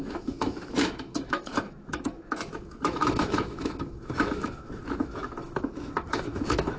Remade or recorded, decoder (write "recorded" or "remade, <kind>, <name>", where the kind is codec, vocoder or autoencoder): remade, autoencoder, DAC-VAE